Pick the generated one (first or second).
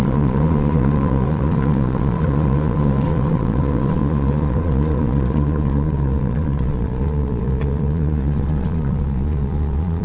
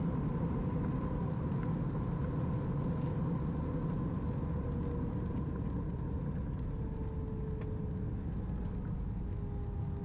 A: first